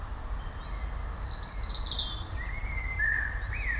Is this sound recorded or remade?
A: recorded